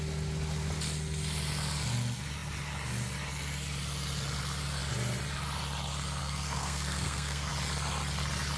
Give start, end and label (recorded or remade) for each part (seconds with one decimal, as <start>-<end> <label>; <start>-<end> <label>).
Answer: 0.0-6.2 recorded; 6.2-7.5 remade; 7.5-8.6 recorded